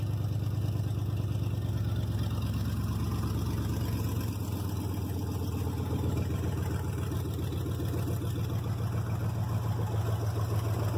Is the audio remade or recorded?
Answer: recorded